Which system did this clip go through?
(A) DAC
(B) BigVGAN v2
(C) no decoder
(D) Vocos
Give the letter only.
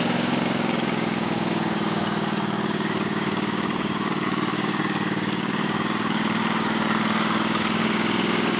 A